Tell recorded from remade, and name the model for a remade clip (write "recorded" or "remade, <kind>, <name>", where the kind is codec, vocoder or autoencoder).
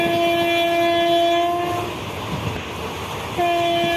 recorded